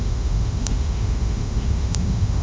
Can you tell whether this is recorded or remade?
remade